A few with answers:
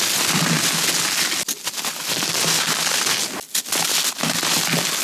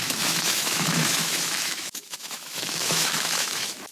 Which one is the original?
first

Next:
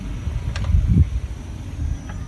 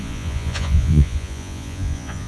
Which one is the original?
first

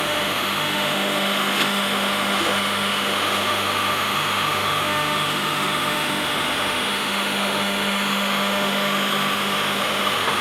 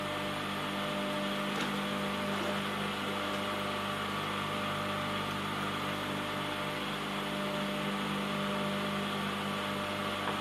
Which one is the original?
second